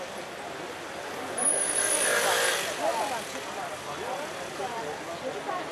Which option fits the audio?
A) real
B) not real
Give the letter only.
A